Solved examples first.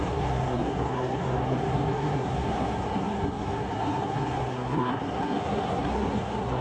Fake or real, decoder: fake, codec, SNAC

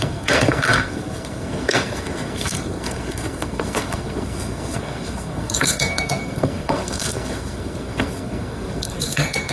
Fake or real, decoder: fake, codec, SNAC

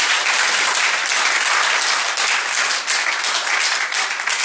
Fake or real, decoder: real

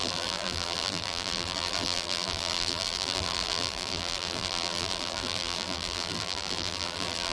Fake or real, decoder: fake, vocoder, BigVGAN v2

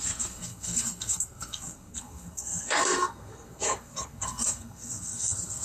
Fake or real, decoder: fake, codec, SNAC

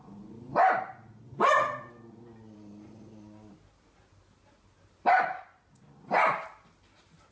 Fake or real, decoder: real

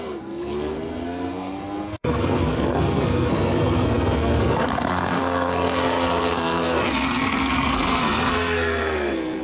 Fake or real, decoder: fake, codec, SNAC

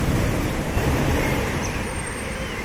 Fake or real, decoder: fake, vocoder, BigVGAN v2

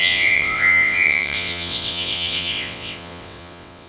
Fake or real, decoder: fake, vocoder, WaveNeXt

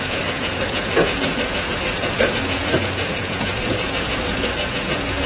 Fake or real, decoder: fake, vocoder, Vocos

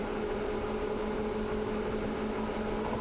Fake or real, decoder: real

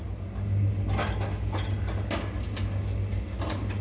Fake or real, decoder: real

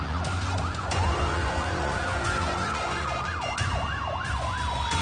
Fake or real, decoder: fake, vocoder, Vocos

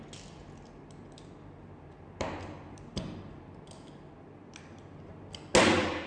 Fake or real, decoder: real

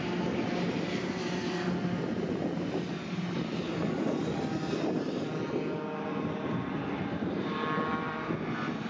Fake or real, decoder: real